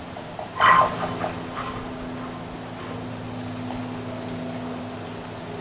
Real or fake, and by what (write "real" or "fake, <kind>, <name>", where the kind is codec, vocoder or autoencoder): real